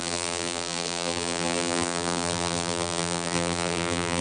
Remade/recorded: remade